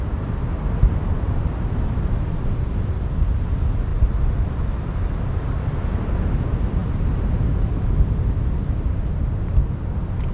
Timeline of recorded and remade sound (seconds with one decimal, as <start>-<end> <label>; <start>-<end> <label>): 0.0-10.3 recorded